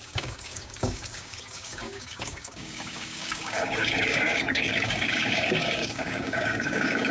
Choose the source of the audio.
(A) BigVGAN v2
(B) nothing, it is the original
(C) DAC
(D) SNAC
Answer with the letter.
C